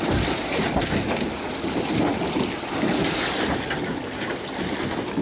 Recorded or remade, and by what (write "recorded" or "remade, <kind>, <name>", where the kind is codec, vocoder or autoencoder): recorded